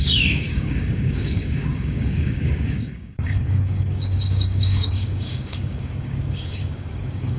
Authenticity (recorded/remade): remade